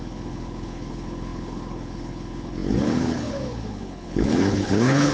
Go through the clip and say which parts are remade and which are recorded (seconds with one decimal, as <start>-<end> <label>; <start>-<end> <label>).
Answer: 0.0-5.1 remade